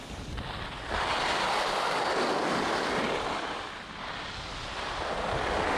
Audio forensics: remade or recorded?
recorded